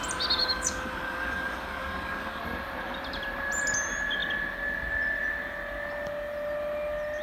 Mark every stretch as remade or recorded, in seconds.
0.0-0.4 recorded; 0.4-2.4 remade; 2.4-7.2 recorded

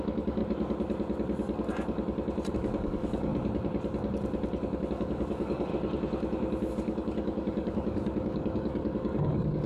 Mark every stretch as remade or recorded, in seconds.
0.0-0.4 remade; 0.4-2.5 recorded; 2.5-3.3 remade; 3.3-4.9 recorded; 4.9-5.7 remade; 5.7-6.7 recorded; 6.7-9.7 remade

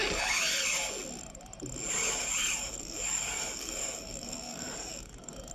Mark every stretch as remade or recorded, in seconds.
0.0-2.4 recorded; 2.4-5.5 remade